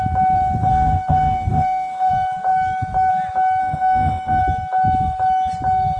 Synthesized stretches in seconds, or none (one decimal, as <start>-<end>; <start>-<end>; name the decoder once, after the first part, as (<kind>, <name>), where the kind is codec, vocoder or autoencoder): 0.7-2.1 (autoencoder, DAC-VAE); 3.6-4.4